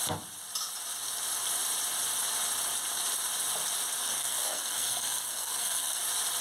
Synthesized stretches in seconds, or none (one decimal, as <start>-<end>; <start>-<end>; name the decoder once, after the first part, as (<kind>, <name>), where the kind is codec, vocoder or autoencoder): 4.0-6.0 (codec, SNAC)

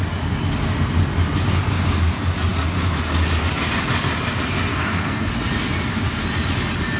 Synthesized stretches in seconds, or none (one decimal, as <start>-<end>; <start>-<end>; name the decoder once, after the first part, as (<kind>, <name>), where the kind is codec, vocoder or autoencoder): 4.7-5.3 (codec, SNAC)

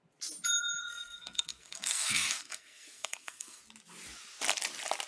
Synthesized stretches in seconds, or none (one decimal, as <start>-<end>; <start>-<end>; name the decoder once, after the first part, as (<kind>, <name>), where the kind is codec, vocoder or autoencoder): 0.8-3.6 (codec, SNAC)

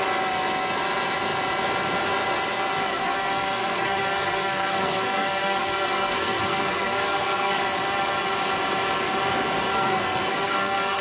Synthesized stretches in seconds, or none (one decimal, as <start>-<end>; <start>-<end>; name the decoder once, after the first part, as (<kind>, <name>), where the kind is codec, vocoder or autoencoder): 2.9-7.6 (codec, SNAC); 9.7-11.0

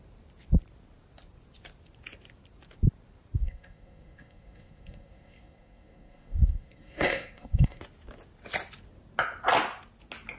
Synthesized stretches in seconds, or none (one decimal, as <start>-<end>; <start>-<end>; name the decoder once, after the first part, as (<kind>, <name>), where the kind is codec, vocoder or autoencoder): 3.4-7.8 (codec, SNAC)

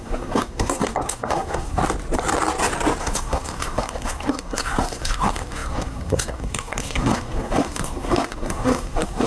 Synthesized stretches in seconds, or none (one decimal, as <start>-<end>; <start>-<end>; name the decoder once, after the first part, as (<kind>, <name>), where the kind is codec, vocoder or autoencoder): 0.0-1.8 (codec, SNAC); 3.0-9.3